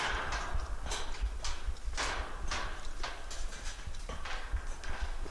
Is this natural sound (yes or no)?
yes